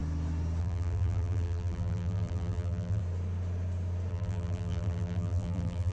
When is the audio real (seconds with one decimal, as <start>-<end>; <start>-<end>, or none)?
0.0-0.6; 3.0-4.1